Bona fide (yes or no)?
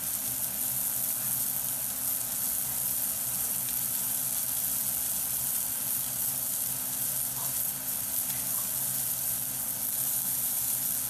yes